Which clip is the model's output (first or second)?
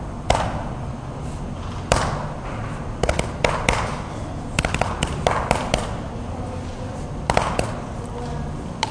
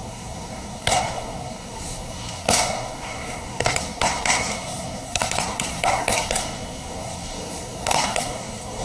second